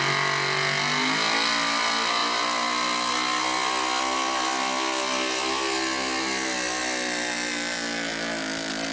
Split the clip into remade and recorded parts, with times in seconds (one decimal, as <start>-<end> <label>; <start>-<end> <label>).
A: 0.0-8.9 recorded